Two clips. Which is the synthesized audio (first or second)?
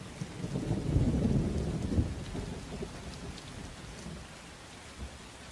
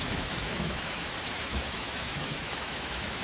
second